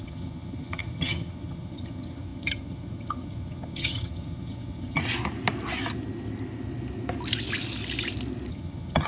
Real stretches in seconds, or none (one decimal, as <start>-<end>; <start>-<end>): 5.0-8.5